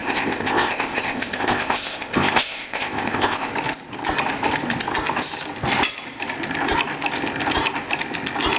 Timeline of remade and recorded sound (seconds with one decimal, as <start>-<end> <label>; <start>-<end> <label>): 0.0-3.5 remade; 3.5-8.6 recorded